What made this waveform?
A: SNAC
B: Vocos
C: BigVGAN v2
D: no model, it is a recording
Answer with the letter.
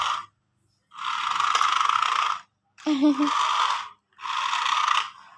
D